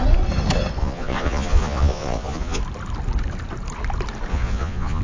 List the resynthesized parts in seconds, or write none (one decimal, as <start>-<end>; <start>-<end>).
0.8-2.6; 4.3-5.0